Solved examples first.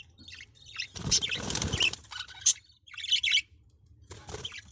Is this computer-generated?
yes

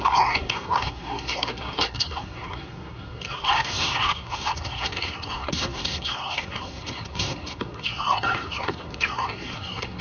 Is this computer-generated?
yes